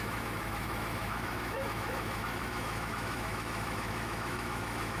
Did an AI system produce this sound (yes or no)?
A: yes